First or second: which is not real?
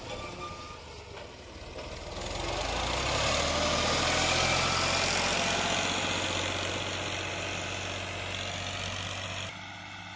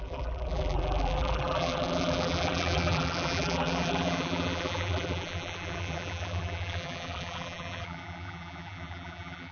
second